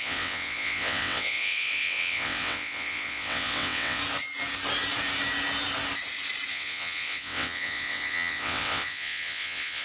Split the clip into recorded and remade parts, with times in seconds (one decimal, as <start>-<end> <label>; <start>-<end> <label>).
0.0-4.0 remade; 4.0-6.5 recorded; 6.5-9.8 remade